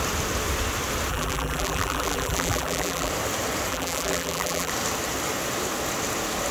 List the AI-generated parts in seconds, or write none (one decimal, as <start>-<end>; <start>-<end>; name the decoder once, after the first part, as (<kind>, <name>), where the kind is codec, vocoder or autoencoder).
1.1-3.1 (vocoder, BigVGAN v2); 3.7-4.7